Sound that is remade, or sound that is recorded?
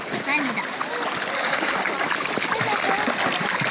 recorded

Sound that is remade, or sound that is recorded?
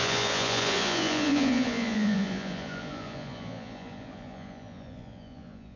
remade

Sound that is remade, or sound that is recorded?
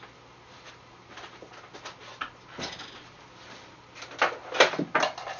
recorded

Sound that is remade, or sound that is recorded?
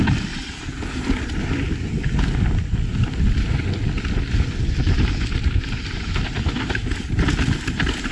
recorded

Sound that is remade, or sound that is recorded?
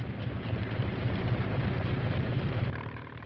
remade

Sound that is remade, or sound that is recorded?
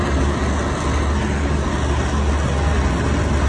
recorded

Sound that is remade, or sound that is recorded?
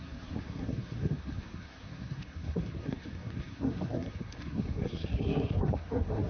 remade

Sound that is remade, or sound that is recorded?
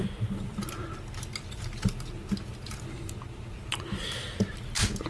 recorded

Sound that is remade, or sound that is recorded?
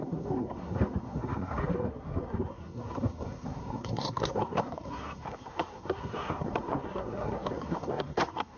remade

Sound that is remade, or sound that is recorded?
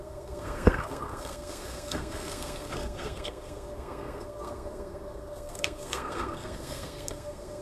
remade